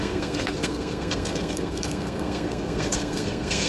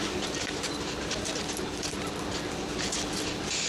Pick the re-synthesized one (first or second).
first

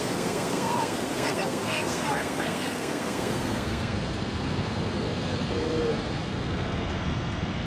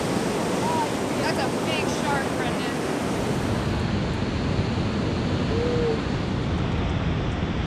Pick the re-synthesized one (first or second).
first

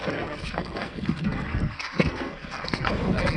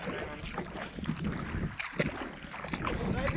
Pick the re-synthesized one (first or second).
first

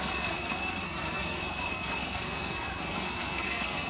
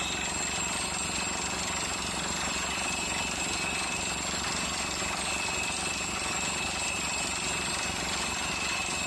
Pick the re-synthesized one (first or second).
first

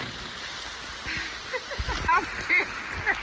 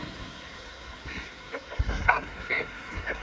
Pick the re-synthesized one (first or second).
second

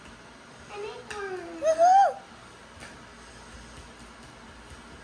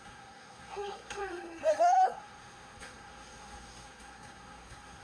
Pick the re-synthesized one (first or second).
second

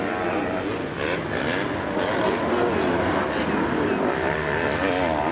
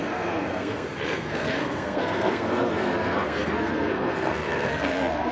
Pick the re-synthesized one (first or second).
second